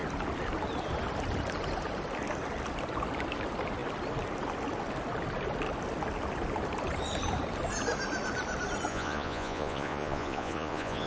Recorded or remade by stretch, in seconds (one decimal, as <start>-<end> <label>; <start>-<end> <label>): 0.0-8.9 recorded; 8.9-11.1 remade